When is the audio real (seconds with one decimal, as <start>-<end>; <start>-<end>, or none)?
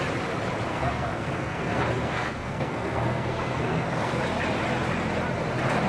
0.0-0.7; 4.2-5.9